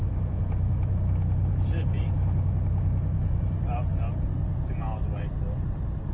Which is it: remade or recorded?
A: recorded